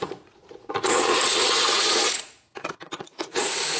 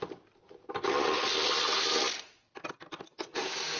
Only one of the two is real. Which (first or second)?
second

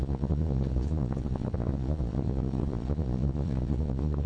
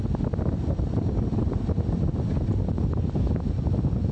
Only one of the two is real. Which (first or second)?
second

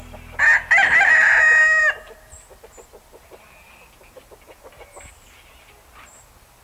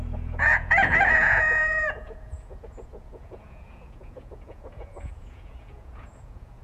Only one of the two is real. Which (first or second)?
first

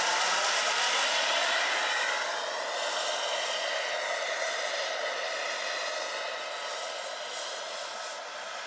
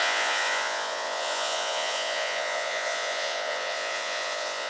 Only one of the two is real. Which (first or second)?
first